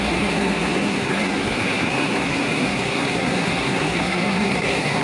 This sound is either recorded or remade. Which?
remade